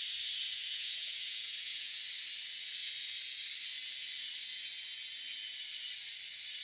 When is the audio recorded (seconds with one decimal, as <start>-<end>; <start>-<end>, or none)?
0.0-0.5; 2.0-6.6